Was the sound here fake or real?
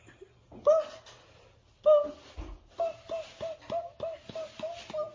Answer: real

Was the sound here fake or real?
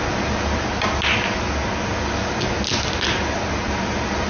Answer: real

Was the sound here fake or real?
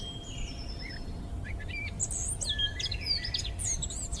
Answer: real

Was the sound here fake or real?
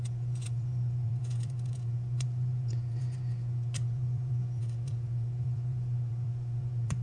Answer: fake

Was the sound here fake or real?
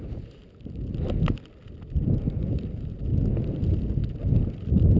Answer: real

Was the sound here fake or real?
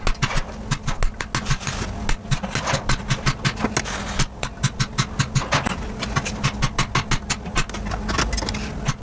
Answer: real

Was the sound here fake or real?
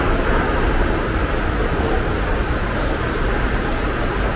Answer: real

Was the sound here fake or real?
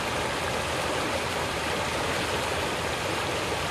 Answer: real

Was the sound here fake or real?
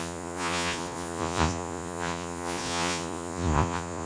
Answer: fake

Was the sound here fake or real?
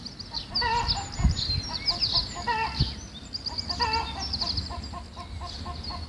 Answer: real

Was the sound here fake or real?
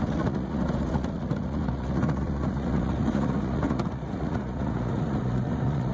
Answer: fake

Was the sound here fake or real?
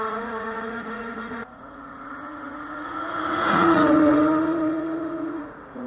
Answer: fake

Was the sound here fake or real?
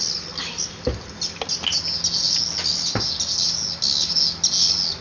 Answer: real